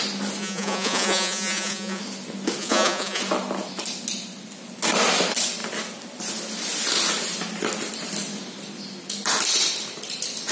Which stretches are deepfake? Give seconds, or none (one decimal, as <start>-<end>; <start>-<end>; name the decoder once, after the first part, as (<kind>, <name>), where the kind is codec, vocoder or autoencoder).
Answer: 0.4-2.0 (vocoder, Vocos); 2.6-3.2